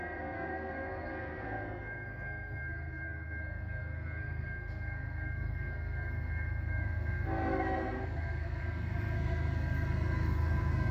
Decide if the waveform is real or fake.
fake